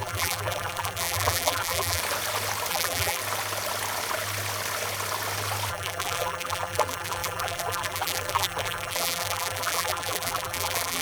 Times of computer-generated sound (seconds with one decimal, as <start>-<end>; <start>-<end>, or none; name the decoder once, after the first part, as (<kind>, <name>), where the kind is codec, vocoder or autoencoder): 0.0-2.0 (vocoder, BigVGAN v2); 2.7-3.2; 5.7-11.0